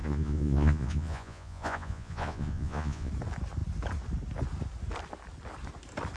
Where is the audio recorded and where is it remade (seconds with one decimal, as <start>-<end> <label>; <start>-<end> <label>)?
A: 0.0-3.1 remade; 3.1-6.2 recorded